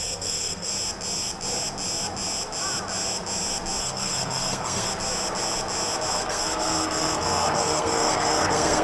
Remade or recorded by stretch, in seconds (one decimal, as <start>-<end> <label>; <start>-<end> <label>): 0.0-0.7 remade; 0.7-3.8 recorded; 3.8-4.9 remade; 4.9-6.1 recorded; 6.1-8.8 remade